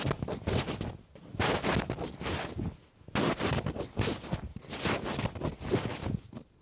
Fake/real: real